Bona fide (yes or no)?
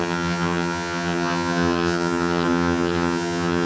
no